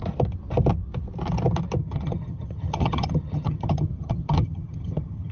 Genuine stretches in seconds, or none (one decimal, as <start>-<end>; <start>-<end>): 0.0-1.8